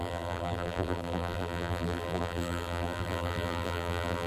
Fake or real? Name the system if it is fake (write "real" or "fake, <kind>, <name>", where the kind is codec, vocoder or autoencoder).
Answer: fake, vocoder, BigVGAN v2